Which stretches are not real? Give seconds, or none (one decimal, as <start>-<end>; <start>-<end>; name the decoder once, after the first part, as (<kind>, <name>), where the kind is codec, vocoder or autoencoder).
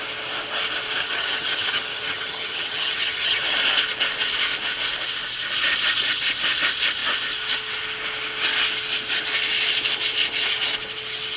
1.0-3.4 (vocoder, HiFi-GAN)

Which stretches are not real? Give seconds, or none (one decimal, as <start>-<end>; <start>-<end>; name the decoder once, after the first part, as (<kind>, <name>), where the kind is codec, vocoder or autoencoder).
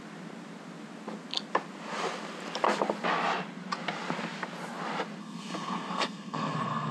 5.2-6.9 (codec, SNAC)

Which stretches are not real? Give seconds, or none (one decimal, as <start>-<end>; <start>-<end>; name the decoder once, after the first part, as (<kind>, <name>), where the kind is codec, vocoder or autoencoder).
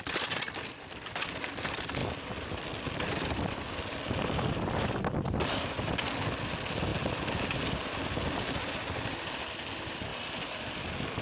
2.0-4.8 (vocoder, BigVGAN v2); 10.1-10.7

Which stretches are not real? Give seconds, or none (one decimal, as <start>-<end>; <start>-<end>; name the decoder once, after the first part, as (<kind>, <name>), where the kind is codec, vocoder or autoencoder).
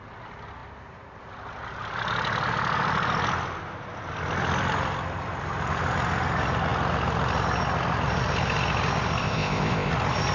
9.2-9.9 (codec, ZipCodec)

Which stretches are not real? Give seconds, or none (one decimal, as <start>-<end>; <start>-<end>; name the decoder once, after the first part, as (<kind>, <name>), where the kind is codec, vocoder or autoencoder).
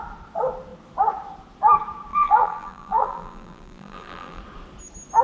2.1-4.4 (vocoder, BigVGAN v2)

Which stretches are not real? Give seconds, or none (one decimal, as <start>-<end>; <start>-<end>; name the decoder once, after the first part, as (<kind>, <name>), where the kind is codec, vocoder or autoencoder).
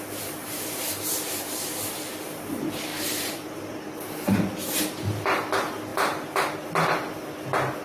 0.4-1.9 (vocoder, BigVGAN v2); 2.9-3.9; 5.9-6.5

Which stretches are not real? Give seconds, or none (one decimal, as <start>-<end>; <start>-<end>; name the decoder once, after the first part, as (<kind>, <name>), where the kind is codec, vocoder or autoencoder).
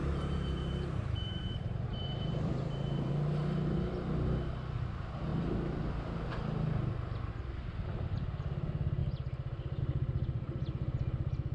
0.0-3.1 (vocoder, BigVGAN v2)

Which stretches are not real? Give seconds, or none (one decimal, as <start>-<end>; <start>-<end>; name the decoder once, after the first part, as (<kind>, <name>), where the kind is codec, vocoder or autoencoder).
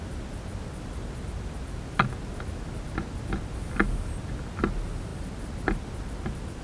5.1-5.8 (vocoder, BigVGAN v2)